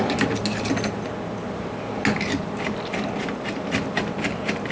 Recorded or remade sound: recorded